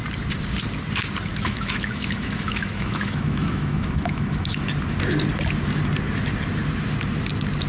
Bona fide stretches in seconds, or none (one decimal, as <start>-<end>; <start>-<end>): 0.0-1.3; 4.6-7.7